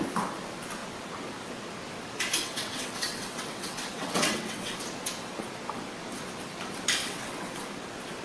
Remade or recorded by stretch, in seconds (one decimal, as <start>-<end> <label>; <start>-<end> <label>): 0.0-2.4 recorded; 2.4-4.8 remade; 4.8-7.0 recorded; 7.0-7.6 remade; 7.6-8.2 recorded